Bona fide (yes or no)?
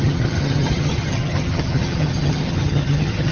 no